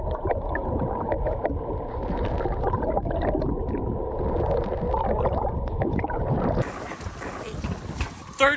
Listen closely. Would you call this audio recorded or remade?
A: recorded